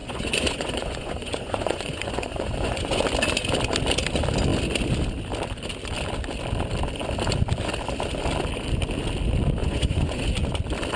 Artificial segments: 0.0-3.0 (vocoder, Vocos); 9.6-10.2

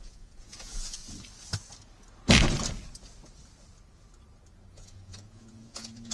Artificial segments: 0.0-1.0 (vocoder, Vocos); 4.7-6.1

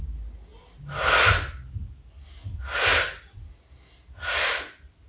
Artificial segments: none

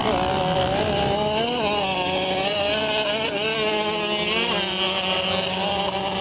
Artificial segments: none

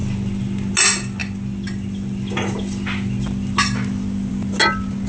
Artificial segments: none